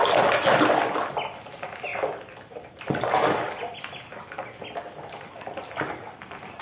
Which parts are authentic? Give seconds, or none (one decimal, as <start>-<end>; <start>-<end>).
0.0-6.6